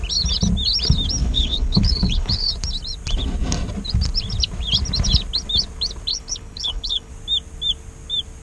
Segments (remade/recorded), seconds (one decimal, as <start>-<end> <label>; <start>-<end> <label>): 0.0-1.2 recorded; 1.2-2.5 remade; 2.5-6.1 recorded; 6.1-7.1 remade; 7.1-8.4 recorded